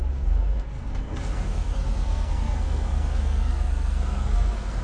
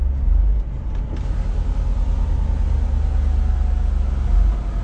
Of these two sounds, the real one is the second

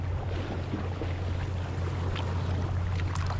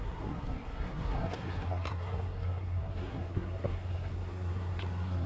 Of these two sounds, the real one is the first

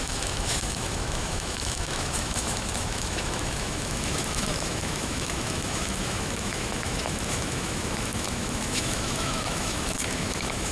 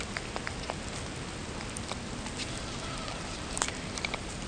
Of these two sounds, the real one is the second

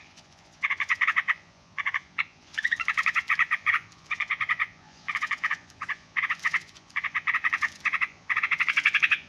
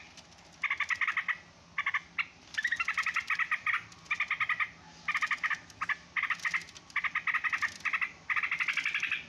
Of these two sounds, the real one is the second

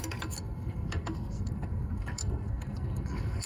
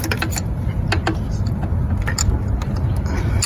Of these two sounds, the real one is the second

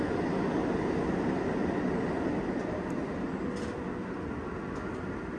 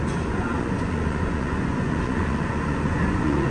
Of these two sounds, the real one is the first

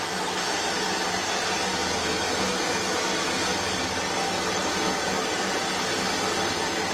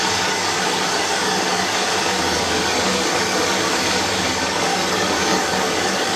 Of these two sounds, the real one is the first